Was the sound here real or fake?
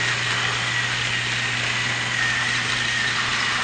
real